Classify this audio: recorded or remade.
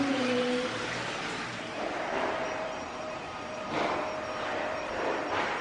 remade